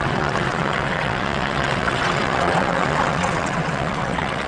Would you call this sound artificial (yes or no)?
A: yes